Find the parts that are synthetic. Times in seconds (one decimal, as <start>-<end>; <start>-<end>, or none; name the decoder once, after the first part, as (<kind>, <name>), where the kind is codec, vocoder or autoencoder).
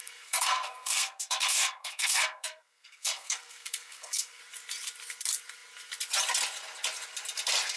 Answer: 0.0-4.4 (codec, SNAC)